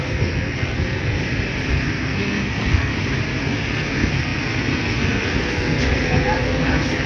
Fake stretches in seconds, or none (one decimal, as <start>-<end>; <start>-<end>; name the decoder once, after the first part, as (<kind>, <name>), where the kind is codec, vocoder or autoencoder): 0.0-1.2 (codec, SNAC); 1.7-2.9; 3.4-7.1